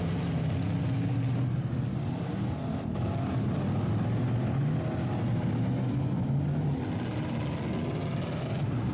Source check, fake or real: real